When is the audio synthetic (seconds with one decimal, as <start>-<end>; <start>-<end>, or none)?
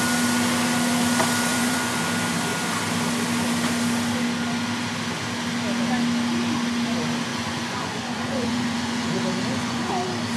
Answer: 1.5-2.0; 7.3-9.9